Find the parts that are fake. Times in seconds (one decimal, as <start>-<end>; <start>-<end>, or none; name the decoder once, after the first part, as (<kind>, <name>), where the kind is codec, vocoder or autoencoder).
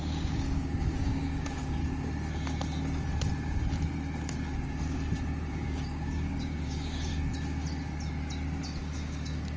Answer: 0.0-1.8 (codec, DAC); 5.5-7.1; 8.8-9.6